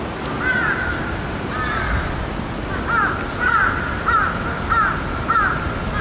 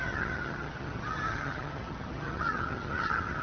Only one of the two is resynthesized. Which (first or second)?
second